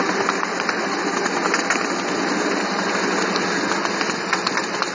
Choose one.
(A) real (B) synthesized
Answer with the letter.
A